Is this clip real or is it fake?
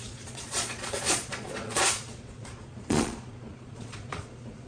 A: fake